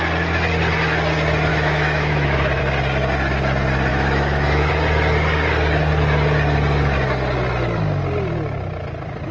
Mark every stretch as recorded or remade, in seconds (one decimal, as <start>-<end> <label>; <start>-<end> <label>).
0.0-1.5 recorded; 1.5-2.6 remade; 2.6-3.9 recorded; 3.9-4.7 remade; 4.7-9.3 recorded